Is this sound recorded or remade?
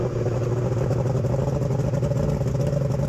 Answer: recorded